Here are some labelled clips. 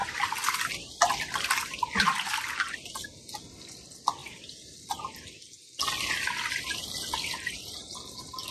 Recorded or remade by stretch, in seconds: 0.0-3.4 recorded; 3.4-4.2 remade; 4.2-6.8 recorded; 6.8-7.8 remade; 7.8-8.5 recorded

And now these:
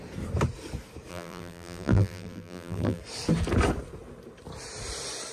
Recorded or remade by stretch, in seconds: 0.0-1.1 recorded; 1.1-3.0 remade; 3.0-5.3 recorded

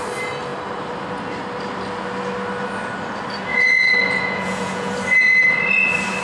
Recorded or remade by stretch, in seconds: 0.0-3.5 recorded; 3.5-4.9 remade; 4.9-6.2 recorded

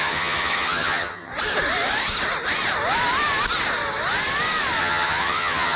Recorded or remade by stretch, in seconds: 0.0-1.3 remade; 1.3-4.8 recorded; 4.8-5.8 remade

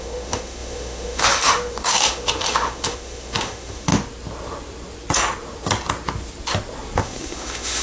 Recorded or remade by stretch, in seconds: 0.0-3.9 remade; 3.9-7.0 recorded; 7.0-7.8 remade

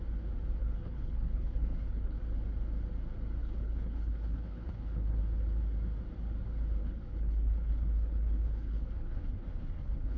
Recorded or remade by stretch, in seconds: 0.0-0.6 recorded; 0.6-2.2 remade; 2.2-3.4 recorded; 3.4-5.2 remade; 5.2-6.8 recorded; 6.8-10.2 remade

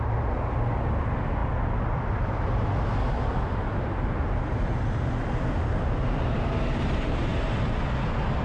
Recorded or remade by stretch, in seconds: 0.0-8.4 recorded